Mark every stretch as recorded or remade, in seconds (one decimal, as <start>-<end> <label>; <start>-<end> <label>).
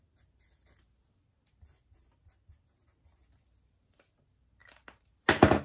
0.0-5.6 recorded